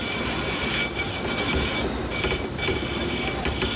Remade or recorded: recorded